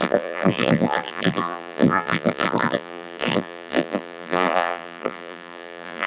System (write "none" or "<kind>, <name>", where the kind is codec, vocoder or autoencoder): vocoder, BigVGAN v2